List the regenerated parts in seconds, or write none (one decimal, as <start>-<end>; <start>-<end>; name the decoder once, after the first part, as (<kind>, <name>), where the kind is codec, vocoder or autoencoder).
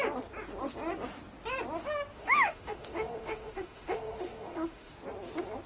2.1-4.9 (autoencoder, DAC-VAE)